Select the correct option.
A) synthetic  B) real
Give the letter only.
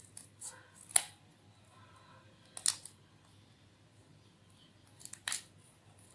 B